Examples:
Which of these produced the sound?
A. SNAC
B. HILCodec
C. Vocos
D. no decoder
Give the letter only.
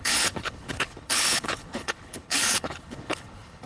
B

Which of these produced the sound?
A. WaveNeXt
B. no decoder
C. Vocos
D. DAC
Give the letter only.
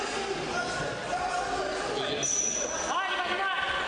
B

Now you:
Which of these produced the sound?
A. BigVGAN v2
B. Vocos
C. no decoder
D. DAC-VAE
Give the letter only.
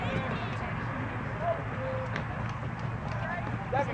C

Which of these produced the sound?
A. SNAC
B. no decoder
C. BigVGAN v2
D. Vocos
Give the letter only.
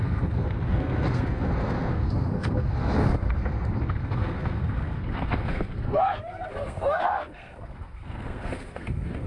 A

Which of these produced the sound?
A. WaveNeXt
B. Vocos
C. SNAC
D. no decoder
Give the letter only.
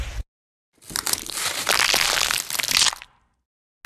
D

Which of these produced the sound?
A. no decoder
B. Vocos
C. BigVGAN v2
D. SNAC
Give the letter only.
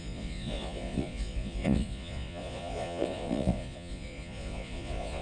B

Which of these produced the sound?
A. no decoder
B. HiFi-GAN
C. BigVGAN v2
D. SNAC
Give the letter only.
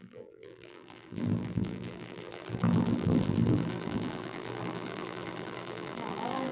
C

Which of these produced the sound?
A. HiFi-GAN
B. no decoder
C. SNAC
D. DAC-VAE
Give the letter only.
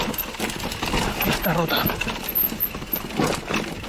B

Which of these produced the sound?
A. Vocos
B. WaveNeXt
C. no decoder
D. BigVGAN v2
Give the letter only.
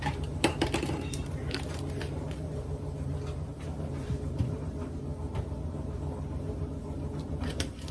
D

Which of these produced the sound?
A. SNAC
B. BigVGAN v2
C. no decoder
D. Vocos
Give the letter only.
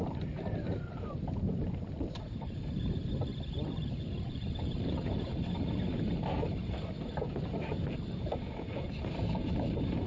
B